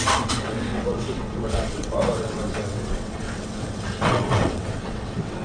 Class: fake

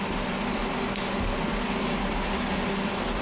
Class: real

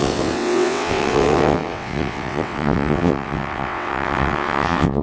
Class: fake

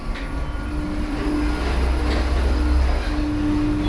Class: real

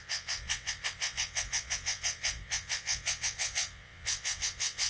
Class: fake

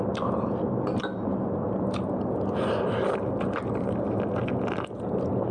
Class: real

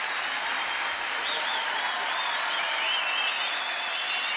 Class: real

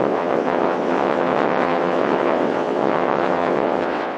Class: fake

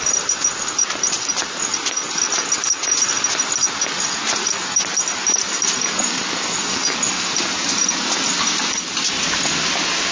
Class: real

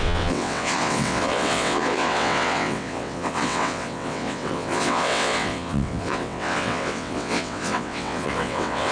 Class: fake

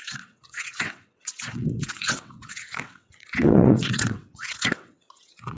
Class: fake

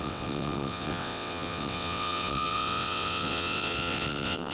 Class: fake